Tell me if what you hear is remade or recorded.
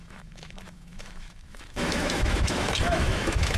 remade